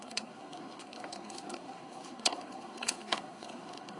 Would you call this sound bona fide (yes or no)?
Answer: no